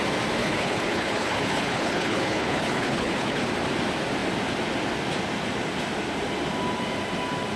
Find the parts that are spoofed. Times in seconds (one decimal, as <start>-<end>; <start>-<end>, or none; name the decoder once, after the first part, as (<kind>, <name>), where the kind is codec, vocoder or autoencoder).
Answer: 0.4-3.5 (codec, HILCodec)